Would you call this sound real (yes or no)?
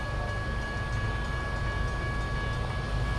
yes